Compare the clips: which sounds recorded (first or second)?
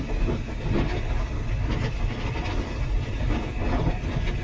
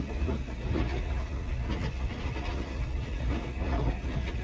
first